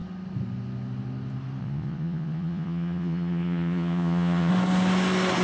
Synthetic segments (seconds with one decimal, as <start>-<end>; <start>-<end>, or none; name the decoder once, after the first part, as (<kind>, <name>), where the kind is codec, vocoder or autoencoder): 1.6-4.5 (vocoder, Vocos)